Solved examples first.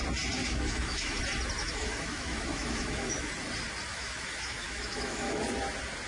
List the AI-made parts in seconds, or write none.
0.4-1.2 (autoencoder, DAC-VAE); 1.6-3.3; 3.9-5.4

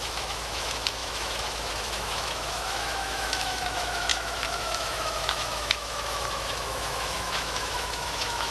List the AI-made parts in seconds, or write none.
0.0-8.5 (autoencoder, DAC-VAE)

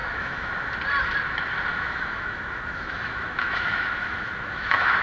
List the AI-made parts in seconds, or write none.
0.0-0.5 (autoencoder, DAC-VAE); 1.7-5.0

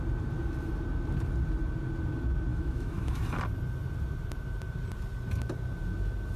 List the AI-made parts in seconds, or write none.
2.5-3.2 (autoencoder, DAC-VAE)

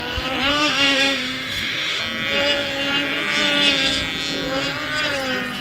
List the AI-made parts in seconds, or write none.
0.5-2.0 (autoencoder, DAC-VAE)

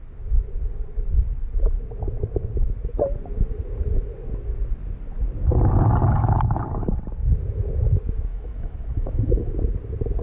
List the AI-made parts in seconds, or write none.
8.3-9.5 (autoencoder, DAC-VAE)

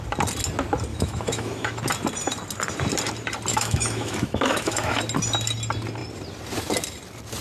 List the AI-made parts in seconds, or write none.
0.9-1.8 (autoencoder, DAC-VAE); 3.5-5.0

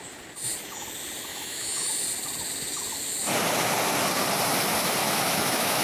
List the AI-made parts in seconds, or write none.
1.3-1.9 (autoencoder, DAC-VAE); 5.0-5.8